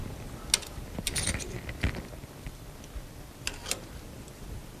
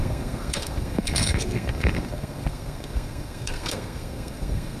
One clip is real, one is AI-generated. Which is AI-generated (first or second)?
second